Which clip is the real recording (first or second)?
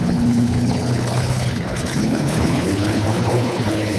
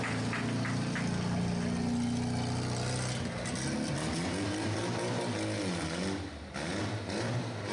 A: second